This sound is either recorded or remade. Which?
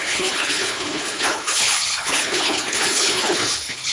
remade